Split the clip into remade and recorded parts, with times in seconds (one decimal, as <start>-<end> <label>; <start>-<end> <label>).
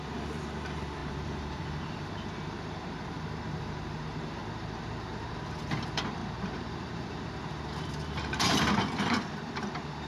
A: 0.0-10.1 remade